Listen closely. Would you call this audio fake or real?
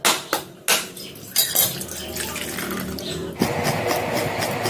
real